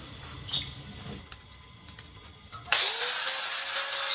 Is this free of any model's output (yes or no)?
yes